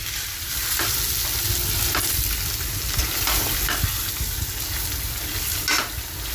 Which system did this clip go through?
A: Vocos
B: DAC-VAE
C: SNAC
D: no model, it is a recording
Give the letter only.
D